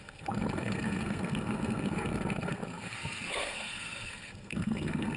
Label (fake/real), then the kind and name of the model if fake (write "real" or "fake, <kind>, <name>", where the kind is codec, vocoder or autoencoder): fake, codec, SNAC